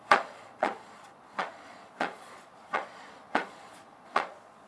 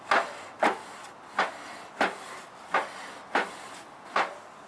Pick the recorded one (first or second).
second